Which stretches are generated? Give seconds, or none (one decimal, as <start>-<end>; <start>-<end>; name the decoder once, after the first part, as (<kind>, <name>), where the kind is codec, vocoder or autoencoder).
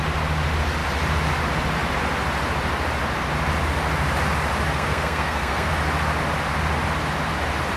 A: 4.7-5.7 (codec, SNAC)